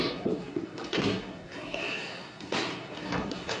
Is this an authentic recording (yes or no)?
no